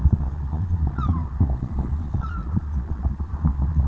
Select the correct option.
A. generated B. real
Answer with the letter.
A